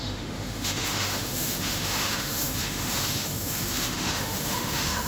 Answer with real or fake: fake